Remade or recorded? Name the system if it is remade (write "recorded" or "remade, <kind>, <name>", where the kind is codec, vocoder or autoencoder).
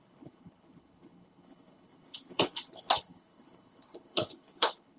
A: remade, codec, HILCodec